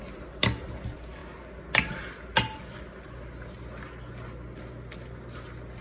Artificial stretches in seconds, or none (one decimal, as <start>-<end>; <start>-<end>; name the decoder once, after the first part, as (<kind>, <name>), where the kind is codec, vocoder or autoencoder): none